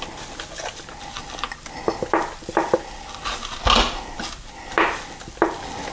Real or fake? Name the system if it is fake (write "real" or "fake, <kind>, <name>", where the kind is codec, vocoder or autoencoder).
real